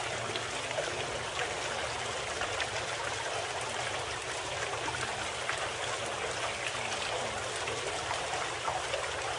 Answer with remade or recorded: recorded